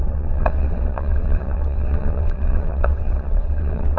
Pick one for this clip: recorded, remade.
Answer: remade